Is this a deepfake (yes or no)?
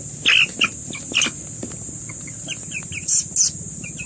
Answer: no